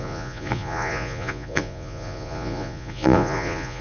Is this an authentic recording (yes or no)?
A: no